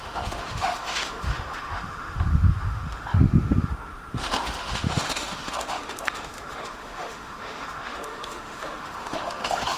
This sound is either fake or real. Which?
fake